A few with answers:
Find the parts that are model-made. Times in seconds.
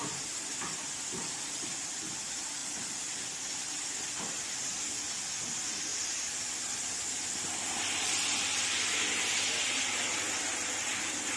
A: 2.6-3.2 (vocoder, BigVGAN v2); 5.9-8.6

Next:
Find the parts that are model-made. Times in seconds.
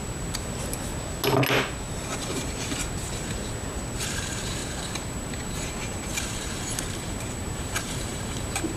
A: 4.0-8.8 (vocoder, BigVGAN v2)